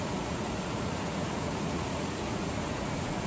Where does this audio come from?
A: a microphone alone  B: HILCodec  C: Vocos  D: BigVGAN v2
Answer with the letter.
C